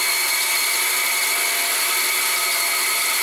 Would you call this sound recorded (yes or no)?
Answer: yes